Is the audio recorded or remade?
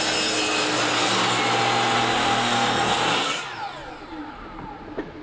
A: recorded